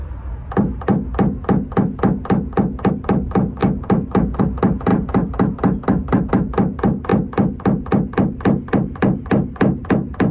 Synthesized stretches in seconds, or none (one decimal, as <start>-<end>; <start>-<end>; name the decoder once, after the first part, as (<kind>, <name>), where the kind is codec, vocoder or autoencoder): 2.9-7.1 (vocoder, BigVGAN v2); 8.1-10.3